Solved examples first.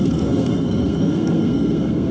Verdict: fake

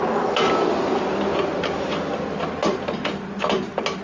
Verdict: real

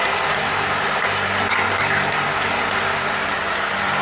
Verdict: real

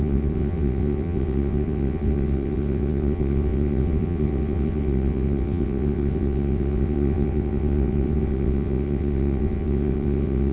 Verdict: fake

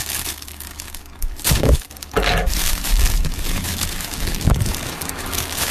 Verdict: fake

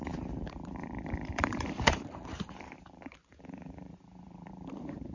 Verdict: fake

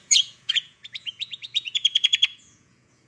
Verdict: fake